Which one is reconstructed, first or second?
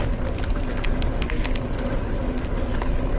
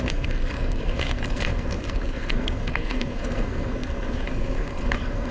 second